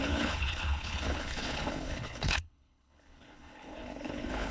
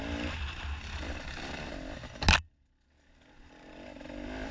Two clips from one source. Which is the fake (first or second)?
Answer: first